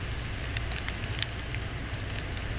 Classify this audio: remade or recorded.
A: recorded